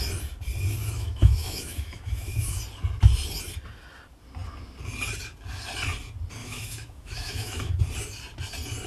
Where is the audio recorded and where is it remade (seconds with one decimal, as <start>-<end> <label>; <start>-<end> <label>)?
0.0-0.8 recorded; 0.8-2.6 remade; 2.6-6.4 recorded; 6.4-7.8 remade; 7.8-8.9 recorded